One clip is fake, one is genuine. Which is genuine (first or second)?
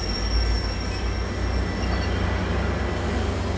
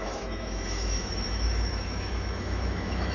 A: first